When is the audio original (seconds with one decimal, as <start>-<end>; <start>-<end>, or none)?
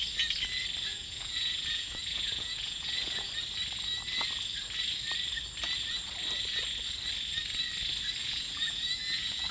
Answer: 0.0-0.9; 3.3-8.2